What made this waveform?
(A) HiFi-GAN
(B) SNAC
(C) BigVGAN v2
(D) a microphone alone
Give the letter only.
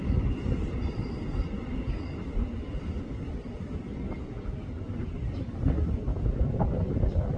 D